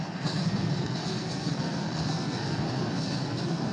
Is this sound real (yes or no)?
no